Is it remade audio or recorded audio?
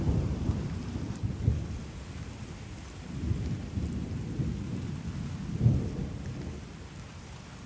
recorded